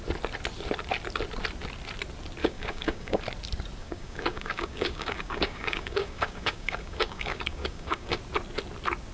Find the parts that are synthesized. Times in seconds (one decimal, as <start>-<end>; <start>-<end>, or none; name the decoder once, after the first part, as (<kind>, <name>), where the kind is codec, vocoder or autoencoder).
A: 2.4-3.2 (codec, DAC); 3.8-8.2